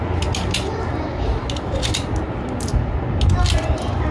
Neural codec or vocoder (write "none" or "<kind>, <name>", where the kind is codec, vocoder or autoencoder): none